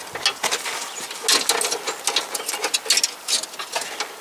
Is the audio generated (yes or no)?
no